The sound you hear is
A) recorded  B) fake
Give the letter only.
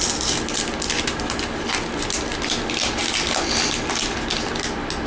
A